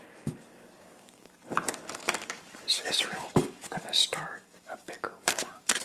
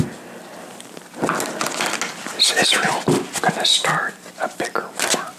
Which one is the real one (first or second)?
second